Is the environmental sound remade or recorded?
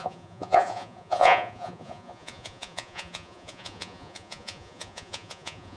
remade